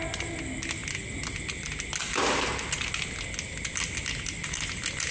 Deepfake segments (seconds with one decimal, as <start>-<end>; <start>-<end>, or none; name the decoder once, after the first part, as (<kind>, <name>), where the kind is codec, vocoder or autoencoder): none